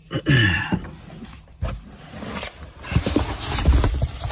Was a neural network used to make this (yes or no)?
no